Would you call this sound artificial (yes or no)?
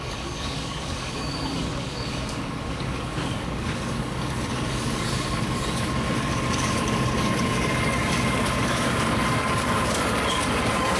yes